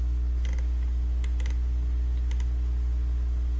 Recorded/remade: recorded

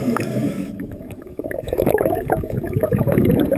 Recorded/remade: remade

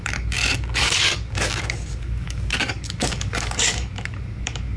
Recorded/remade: remade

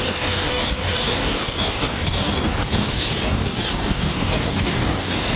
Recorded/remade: remade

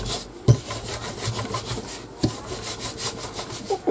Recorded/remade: recorded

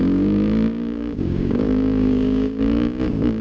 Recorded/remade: remade